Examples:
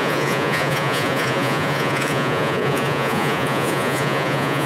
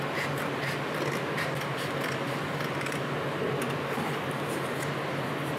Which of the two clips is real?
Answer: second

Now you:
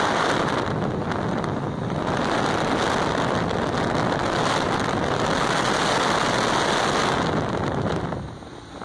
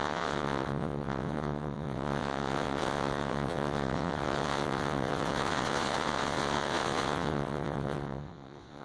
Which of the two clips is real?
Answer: first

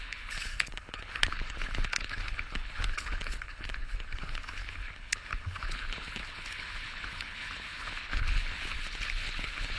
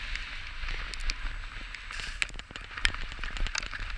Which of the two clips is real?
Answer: second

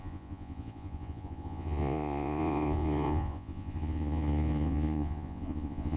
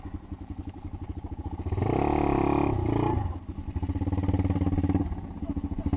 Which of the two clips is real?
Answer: second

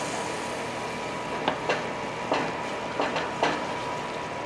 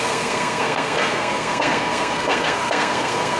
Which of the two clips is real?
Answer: first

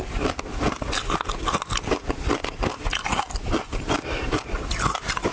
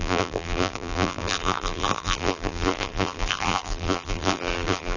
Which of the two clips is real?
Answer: first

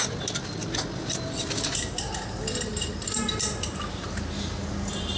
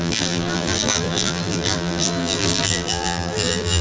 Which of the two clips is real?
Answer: first